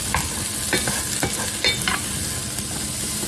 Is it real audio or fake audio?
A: real